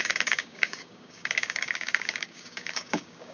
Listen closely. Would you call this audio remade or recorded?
remade